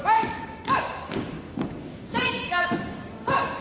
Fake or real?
fake